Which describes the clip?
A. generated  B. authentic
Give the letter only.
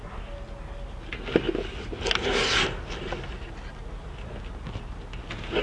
B